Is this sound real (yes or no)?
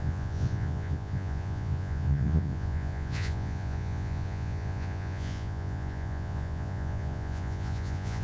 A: no